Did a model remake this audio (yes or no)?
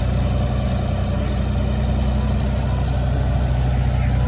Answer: no